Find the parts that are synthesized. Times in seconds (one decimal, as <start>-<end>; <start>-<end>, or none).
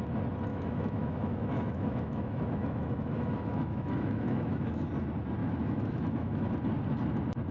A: 0.5-4.9; 5.4-6.5